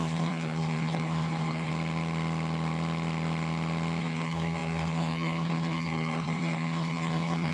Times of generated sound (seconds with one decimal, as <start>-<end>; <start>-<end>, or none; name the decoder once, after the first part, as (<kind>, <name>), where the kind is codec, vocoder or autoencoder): 0.0-1.7 (codec, SNAC); 4.0-7.5